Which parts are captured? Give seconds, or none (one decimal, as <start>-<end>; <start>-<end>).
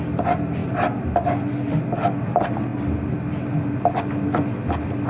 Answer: 0.0-0.6; 1.7-5.1